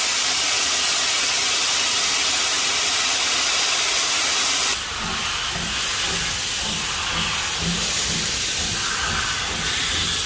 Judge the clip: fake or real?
real